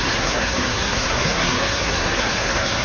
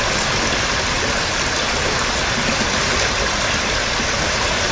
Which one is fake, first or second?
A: first